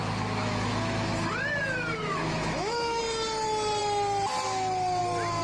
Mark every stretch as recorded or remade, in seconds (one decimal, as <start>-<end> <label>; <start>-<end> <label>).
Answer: 0.0-1.3 remade; 1.3-2.0 recorded; 2.0-3.0 remade; 3.0-5.4 recorded